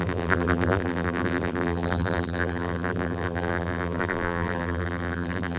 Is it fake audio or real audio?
fake